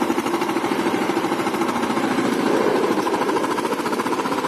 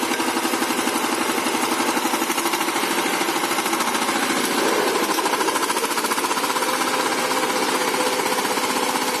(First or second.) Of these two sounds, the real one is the second